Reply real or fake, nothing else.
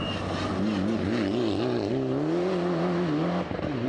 real